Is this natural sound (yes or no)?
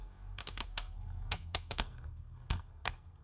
no